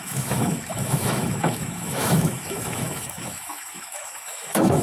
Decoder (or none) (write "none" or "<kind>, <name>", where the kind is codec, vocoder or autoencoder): autoencoder, DAC-VAE